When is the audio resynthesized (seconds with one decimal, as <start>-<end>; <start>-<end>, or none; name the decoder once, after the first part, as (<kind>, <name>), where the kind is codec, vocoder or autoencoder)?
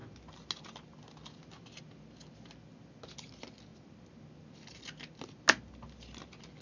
none